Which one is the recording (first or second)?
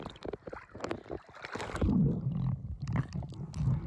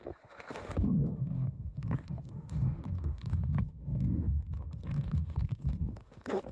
first